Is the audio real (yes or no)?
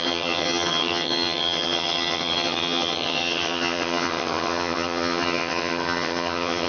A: no